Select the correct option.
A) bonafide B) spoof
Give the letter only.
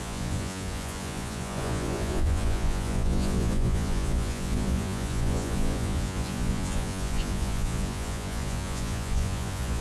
B